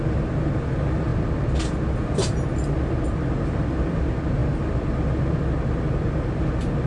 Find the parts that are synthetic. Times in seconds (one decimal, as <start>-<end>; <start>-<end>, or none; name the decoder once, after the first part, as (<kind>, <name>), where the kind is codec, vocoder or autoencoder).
none

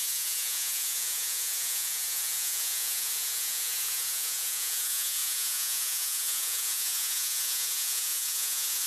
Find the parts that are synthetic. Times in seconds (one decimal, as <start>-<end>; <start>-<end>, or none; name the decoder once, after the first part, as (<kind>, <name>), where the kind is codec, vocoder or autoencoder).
0.0-8.9 (vocoder, Vocos)

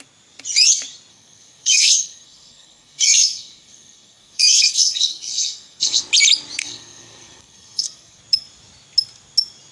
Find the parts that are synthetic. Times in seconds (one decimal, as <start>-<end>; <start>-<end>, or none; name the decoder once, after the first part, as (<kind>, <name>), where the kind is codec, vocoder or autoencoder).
1.1-6.0 (codec, SNAC); 6.6-8.2